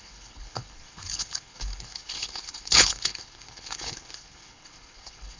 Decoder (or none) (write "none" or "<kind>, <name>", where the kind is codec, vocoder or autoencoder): codec, HILCodec